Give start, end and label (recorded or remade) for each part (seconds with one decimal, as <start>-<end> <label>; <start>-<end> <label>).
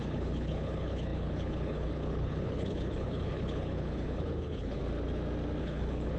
0.0-4.8 remade; 4.8-5.6 recorded; 5.6-6.2 remade